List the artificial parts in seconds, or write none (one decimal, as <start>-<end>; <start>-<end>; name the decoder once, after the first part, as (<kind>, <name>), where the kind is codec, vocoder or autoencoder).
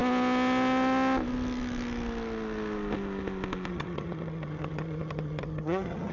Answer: 3.7-6.1 (vocoder, HiFi-GAN)